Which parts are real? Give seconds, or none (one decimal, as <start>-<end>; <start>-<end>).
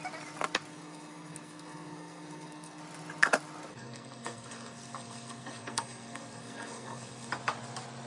0.0-0.7; 2.8-3.7; 7.3-8.1